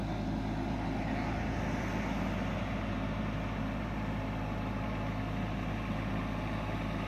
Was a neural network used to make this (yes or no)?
no